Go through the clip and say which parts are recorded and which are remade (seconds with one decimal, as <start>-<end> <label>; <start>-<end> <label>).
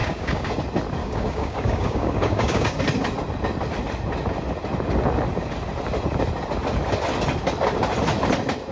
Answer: 0.0-0.5 remade; 0.5-1.0 recorded; 1.0-2.8 remade; 2.8-8.7 recorded